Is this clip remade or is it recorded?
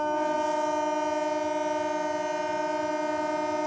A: recorded